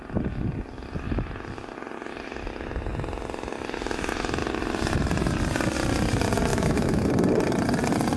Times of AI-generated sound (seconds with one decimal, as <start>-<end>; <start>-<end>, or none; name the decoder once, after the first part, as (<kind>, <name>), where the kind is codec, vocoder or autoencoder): 6.5-7.1 (autoencoder, DAC-VAE)